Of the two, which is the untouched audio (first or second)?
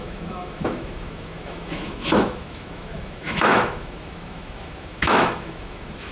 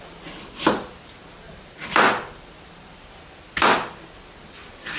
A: second